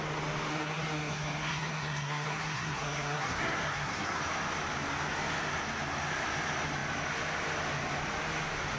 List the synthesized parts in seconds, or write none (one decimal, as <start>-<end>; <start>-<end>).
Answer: 0.5-4.2